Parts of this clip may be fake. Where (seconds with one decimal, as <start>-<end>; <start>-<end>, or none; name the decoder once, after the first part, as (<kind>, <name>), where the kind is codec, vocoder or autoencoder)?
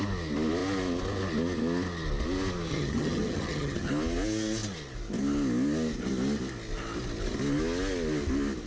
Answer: 2.7-3.9 (vocoder, HiFi-GAN)